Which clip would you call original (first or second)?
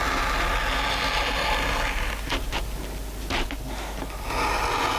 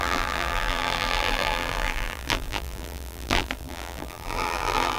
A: first